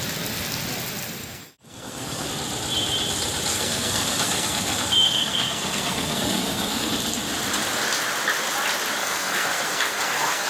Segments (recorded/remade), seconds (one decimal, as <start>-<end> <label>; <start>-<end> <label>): 0.0-1.2 recorded; 1.2-2.3 remade; 2.3-3.5 recorded; 3.5-6.9 remade; 6.9-9.0 recorded; 9.0-10.5 remade